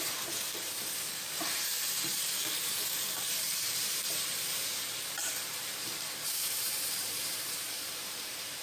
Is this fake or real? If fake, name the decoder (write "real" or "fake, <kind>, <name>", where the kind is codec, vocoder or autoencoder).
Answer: fake, vocoder, BigVGAN v2